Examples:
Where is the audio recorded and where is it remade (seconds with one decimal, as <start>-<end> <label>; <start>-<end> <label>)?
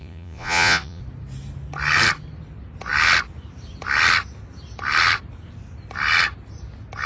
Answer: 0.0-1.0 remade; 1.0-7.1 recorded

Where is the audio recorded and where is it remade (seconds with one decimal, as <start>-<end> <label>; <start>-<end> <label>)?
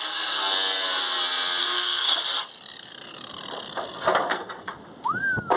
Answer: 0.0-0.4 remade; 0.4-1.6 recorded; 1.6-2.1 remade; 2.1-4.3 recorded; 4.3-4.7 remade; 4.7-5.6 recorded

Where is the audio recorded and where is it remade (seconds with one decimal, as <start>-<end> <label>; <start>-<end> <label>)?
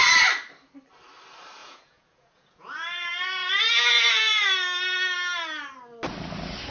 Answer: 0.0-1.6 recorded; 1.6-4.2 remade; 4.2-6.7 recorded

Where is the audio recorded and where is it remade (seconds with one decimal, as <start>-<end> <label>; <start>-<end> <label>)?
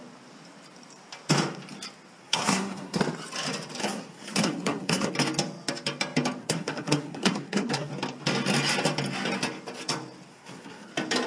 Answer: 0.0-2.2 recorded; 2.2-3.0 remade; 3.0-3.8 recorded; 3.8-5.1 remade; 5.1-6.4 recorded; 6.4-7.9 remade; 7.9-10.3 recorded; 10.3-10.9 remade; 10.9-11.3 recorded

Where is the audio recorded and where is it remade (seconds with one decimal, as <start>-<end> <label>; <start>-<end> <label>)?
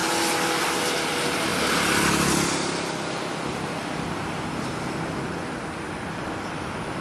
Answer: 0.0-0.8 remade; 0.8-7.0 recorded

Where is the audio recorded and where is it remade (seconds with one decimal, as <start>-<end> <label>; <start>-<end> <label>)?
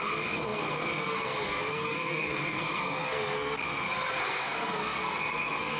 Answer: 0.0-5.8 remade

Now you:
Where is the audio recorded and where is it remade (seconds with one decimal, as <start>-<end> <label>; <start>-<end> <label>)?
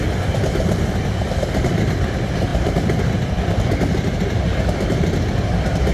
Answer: 0.0-2.5 recorded; 2.5-3.0 remade; 3.0-5.9 recorded